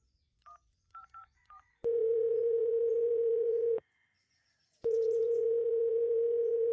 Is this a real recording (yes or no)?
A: no